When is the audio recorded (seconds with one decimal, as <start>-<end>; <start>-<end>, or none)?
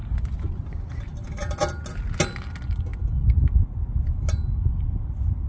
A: 0.0-5.5